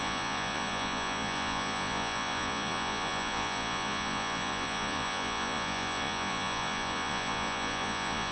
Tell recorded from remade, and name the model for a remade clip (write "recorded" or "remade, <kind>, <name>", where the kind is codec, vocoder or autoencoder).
remade, vocoder, Vocos